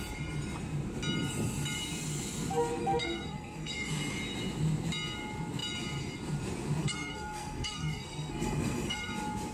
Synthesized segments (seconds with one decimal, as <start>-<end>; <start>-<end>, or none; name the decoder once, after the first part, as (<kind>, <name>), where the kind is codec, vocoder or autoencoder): 2.8-3.9 (codec, SNAC); 6.8-9.1